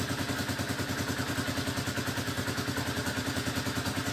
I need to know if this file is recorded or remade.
recorded